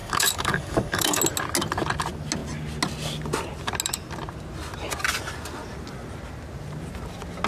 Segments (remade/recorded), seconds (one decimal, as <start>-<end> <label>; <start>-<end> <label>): 0.0-1.2 remade; 1.2-7.5 recorded